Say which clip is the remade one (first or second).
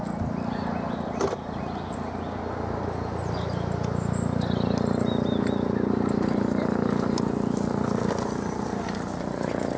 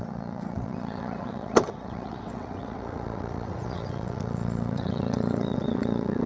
second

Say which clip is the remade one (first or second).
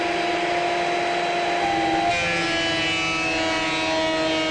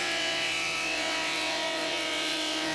second